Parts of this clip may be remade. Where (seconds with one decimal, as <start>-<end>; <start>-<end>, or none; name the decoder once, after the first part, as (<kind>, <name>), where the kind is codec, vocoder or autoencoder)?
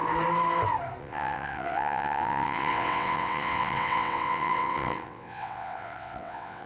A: 1.0-6.7 (vocoder, WaveNeXt)